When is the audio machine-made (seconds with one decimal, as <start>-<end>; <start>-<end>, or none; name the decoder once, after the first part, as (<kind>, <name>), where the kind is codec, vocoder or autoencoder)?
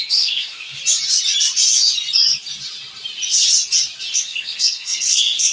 0.0-0.8 (codec, SNAC); 4.1-5.5